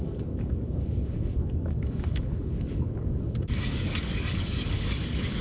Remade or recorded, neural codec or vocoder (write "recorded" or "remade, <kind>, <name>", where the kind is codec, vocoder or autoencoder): remade, codec, DAC